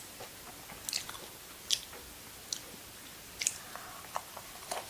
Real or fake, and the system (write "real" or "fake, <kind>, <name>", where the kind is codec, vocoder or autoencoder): real